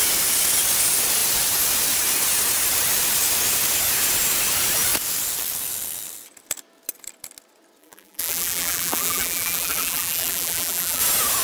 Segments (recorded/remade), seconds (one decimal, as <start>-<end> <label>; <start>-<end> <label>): 0.0-7.8 recorded; 7.8-11.0 remade; 11.0-11.4 recorded

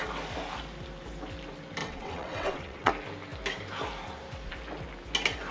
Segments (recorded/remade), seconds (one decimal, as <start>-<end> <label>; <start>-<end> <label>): 0.0-1.8 recorded; 1.8-2.9 remade; 2.9-5.5 recorded

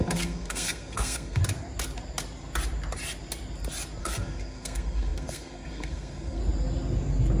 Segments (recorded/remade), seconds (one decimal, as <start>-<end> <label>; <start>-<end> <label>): 0.0-1.4 remade; 1.4-4.0 recorded; 4.0-6.4 remade; 6.4-7.4 recorded